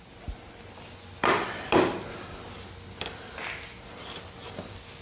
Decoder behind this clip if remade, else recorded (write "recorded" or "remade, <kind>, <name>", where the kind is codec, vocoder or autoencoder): recorded